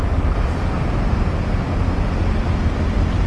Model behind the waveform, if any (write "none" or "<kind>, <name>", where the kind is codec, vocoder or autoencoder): none